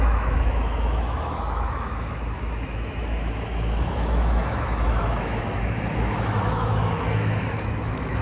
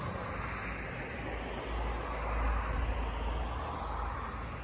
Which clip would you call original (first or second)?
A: second